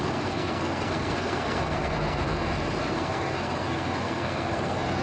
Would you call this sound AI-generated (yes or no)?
yes